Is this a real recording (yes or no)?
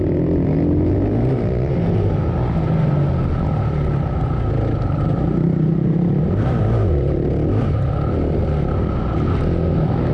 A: yes